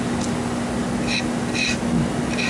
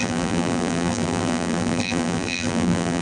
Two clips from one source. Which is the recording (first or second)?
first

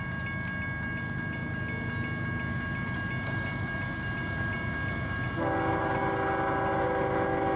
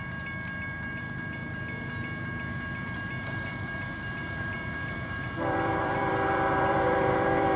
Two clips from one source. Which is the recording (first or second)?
first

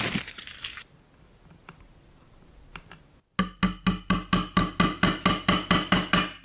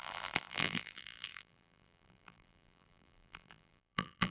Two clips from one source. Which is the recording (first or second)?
first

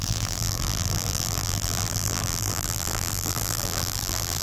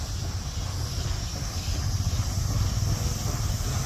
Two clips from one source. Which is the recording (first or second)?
second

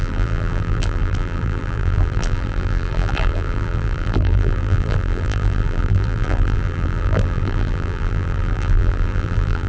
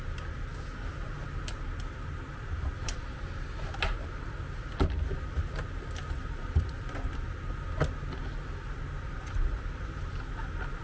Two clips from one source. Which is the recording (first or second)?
second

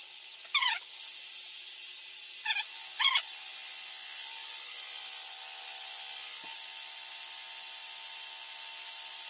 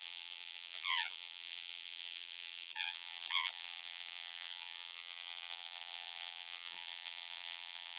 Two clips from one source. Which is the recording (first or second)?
first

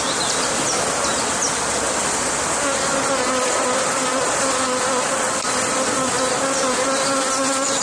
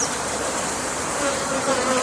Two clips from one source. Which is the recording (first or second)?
first